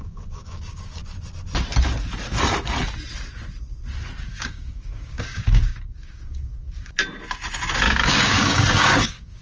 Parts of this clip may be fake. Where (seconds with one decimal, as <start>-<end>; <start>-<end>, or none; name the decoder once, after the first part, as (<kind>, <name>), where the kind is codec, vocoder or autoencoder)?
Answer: 0.0-1.0 (codec, DAC); 4.2-7.0; 7.9-9.4

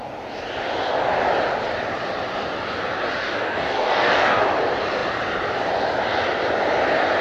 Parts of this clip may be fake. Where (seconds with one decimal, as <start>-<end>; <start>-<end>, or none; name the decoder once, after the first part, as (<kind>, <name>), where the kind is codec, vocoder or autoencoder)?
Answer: 3.2-4.4 (codec, DAC)

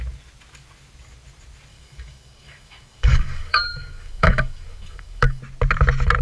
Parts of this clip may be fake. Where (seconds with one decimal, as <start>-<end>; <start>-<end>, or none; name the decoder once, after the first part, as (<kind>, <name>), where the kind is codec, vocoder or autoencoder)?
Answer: 1.7-5.4 (codec, DAC)